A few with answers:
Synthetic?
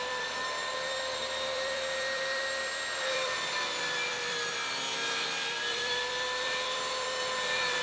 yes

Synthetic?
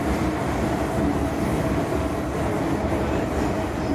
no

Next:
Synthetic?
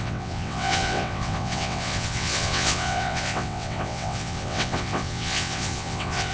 yes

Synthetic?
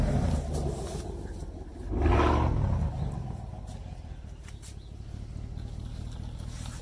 no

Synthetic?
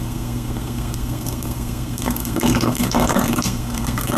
yes